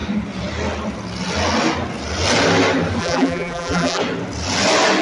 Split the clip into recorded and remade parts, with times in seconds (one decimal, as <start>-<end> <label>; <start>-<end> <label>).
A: 0.0-3.0 recorded; 3.0-4.0 remade; 4.0-5.0 recorded